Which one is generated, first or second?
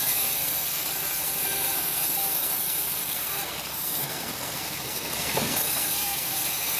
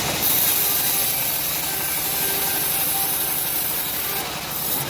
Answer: first